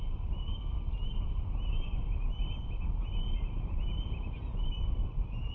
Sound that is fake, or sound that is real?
real